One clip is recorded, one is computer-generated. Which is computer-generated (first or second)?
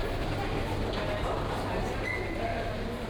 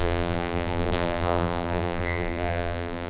second